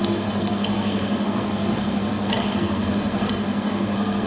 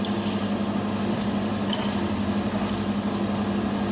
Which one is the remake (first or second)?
first